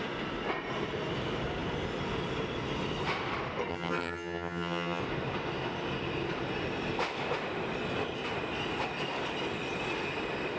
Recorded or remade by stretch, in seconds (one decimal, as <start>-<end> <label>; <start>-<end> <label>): 0.0-3.7 recorded; 3.7-5.0 remade; 5.0-10.6 recorded